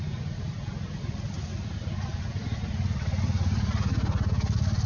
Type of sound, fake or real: real